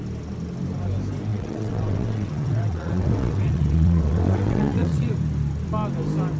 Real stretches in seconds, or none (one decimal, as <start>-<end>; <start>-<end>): 0.0-1.3; 5.1-6.4